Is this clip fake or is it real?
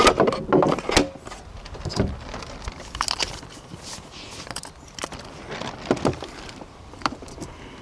real